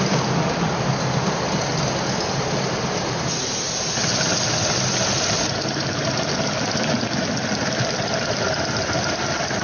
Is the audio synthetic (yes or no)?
no